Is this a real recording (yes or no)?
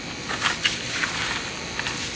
yes